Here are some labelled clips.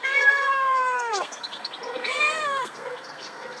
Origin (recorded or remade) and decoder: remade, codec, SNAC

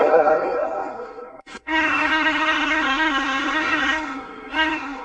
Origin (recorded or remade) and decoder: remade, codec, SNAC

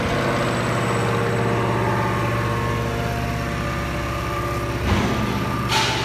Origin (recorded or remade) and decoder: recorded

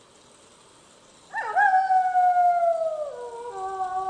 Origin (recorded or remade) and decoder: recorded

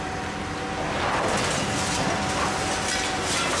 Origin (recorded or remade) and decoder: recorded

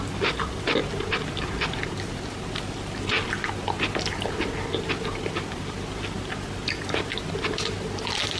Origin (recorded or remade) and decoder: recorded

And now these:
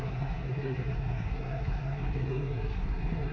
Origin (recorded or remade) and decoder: remade, codec, SNAC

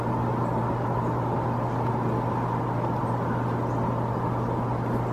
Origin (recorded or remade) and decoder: recorded